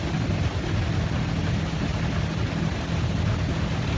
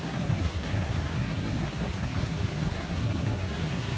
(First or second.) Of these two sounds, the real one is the first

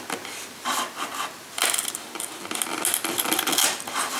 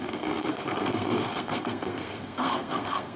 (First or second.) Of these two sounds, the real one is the first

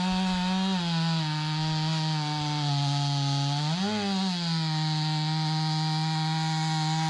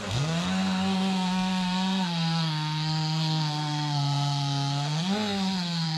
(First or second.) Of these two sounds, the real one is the first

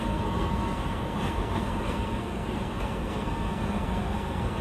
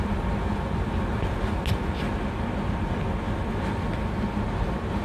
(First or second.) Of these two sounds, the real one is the second